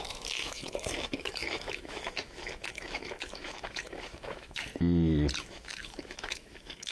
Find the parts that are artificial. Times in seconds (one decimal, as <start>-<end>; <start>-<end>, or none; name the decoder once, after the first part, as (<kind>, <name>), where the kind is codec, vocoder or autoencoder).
0.0-4.7 (autoencoder, DAC-VAE); 5.4-6.9